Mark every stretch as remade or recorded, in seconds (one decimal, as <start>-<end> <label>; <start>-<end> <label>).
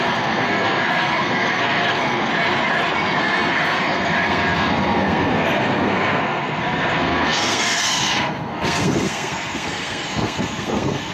0.0-2.3 remade; 2.3-3.2 recorded; 3.2-11.1 remade